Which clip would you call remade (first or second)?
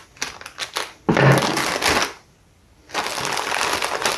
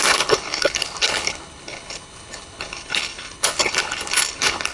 second